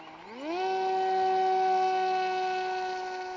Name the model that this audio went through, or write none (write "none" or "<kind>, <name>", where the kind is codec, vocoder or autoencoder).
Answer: none